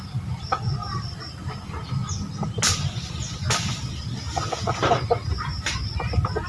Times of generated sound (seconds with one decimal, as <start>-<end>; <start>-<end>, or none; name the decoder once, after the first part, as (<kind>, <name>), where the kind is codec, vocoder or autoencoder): 0.8-1.5 (vocoder, BigVGAN v2); 5.2-5.8